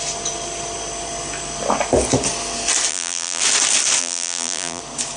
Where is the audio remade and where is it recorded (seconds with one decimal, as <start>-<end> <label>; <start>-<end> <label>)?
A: 0.0-2.9 recorded; 2.9-3.4 remade; 3.4-4.0 recorded; 4.0-4.8 remade; 4.8-5.2 recorded